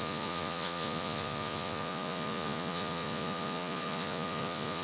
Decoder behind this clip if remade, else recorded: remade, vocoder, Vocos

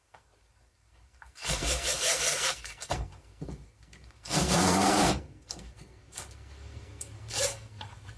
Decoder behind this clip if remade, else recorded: remade, codec, SNAC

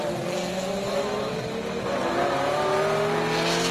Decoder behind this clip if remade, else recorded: recorded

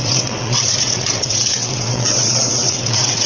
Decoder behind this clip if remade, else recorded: remade, vocoder, WaveNeXt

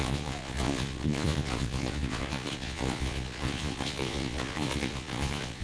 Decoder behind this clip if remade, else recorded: remade, vocoder, Vocos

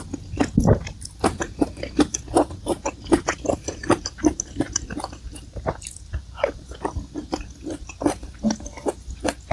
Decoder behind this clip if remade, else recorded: recorded